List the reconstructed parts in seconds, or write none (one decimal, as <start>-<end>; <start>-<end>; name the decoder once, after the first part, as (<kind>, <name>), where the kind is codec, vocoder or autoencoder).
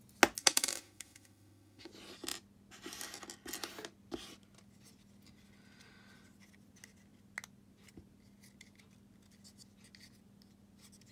0.4-1.9 (autoencoder, DAC-VAE)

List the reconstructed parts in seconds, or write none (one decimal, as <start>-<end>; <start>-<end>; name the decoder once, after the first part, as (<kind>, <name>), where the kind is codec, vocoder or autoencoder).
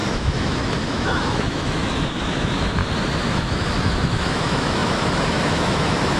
0.0-2.8 (autoencoder, DAC-VAE); 3.3-6.2